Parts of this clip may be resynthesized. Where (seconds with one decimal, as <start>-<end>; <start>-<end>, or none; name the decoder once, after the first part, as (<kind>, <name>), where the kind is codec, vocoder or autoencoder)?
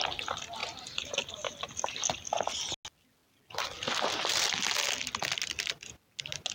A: 0.6-1.5 (vocoder, BigVGAN v2)